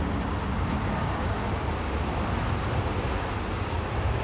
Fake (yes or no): no